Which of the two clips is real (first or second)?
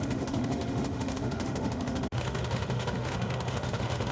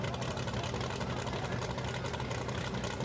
second